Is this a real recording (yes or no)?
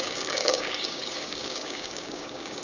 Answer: no